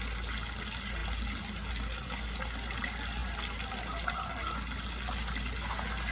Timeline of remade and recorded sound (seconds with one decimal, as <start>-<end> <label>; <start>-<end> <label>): 0.0-6.1 recorded

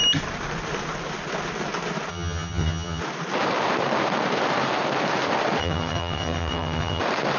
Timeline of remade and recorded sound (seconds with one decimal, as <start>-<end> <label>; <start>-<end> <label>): 0.0-2.1 recorded; 2.1-3.0 remade; 3.0-5.6 recorded; 5.6-7.0 remade; 7.0-7.4 recorded

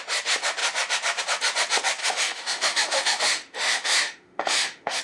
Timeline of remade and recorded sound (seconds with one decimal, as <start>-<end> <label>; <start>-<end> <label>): 0.0-2.0 recorded; 2.0-5.0 remade